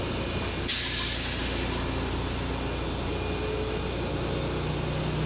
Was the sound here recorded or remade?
recorded